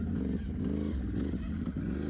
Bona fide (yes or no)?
yes